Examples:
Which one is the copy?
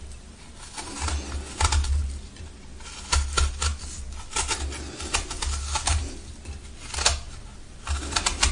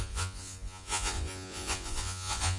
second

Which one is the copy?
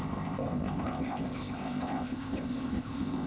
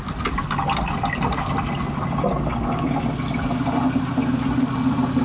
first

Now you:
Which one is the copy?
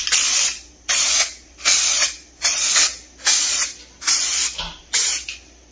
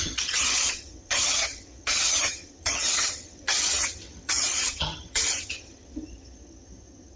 second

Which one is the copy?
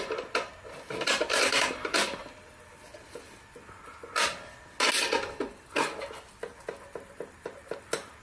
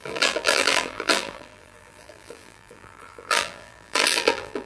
second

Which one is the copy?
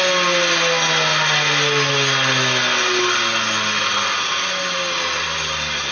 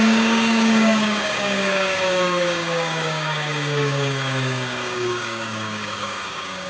second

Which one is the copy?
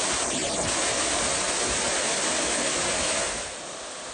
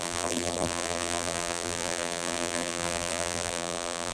second